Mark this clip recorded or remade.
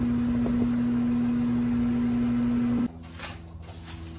recorded